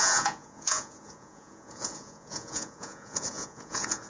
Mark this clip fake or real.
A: fake